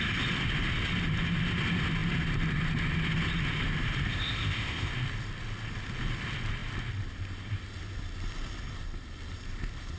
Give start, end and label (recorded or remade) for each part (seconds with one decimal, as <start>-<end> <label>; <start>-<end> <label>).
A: 0.0-4.1 recorded; 4.1-4.9 remade; 4.9-10.0 recorded